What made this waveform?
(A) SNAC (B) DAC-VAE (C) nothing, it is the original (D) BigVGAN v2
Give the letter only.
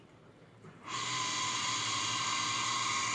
D